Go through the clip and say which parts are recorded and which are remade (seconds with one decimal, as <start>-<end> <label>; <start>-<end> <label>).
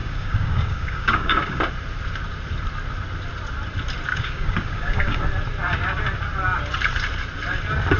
0.0-1.6 remade; 1.6-4.1 recorded; 4.1-5.2 remade; 5.2-8.0 recorded